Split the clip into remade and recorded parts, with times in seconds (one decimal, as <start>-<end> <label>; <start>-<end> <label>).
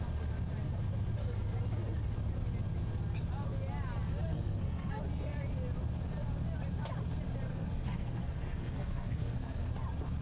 0.0-4.3 recorded; 4.3-4.9 remade; 4.9-7.5 recorded; 7.5-9.7 remade; 9.7-10.2 recorded